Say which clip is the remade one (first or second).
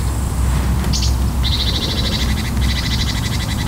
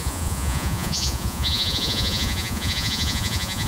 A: second